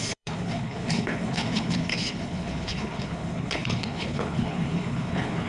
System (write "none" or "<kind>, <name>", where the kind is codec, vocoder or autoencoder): codec, HILCodec